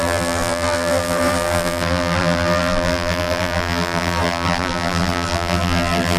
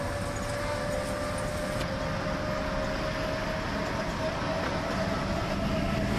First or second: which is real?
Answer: second